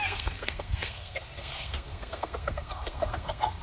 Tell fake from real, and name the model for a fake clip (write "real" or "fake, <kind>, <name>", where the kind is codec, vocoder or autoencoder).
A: fake, codec, SNAC